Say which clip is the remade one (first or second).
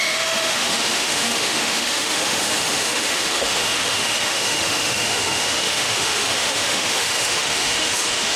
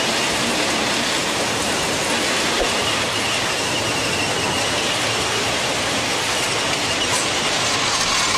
first